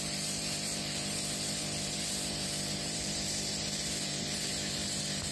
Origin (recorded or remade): remade